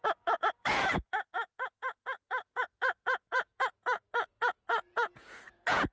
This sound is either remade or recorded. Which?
remade